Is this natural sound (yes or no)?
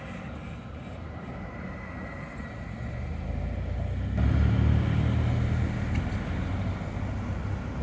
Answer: yes